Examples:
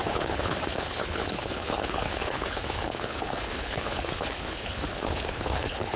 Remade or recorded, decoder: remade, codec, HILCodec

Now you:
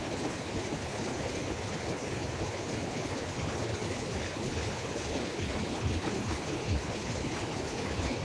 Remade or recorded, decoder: remade, codec, HILCodec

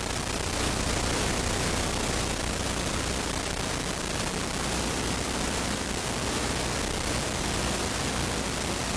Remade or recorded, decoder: recorded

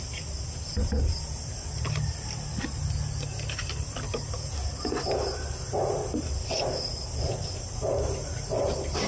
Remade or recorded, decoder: recorded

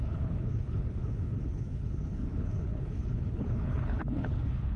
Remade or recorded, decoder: remade, codec, HILCodec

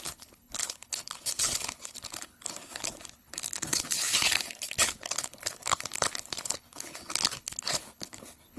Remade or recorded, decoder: remade, codec, HILCodec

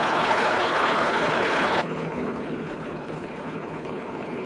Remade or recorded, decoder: remade, codec, HILCodec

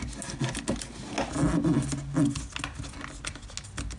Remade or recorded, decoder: recorded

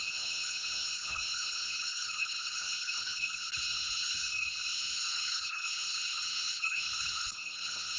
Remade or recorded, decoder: remade, codec, HILCodec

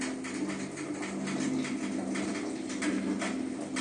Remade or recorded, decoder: recorded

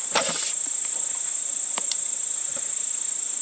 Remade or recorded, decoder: recorded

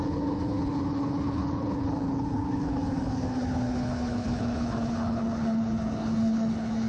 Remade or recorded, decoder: remade, codec, HILCodec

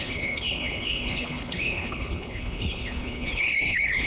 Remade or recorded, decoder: remade, codec, HILCodec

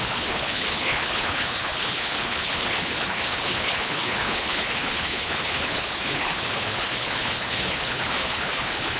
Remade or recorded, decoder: remade, codec, HILCodec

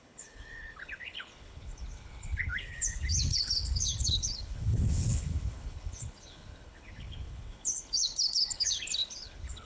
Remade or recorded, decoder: remade, codec, HILCodec